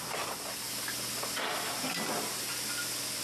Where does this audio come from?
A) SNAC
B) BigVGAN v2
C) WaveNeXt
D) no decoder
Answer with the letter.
D